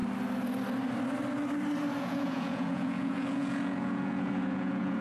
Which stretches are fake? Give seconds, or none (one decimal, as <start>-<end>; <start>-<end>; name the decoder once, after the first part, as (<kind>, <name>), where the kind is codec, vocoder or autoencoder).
2.0-5.0 (vocoder, Vocos)